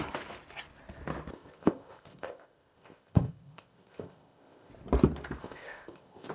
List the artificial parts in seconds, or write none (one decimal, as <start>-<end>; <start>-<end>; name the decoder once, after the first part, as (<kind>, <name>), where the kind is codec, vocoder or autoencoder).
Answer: 1.3-4.7 (codec, ZipCodec); 5.4-6.3